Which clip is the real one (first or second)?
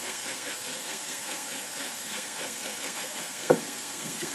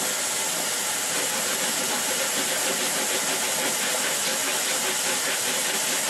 second